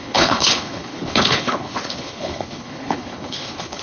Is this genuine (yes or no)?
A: no